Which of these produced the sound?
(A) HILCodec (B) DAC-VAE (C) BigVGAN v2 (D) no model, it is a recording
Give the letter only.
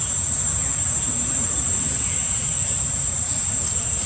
C